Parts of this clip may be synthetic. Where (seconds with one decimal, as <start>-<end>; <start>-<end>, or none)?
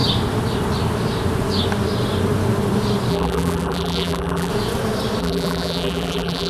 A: 3.1-4.5; 5.2-6.5